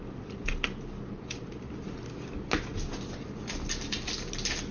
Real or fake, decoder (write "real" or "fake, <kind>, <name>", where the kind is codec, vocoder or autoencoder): real